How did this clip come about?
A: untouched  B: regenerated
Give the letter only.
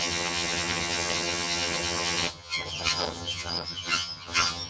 B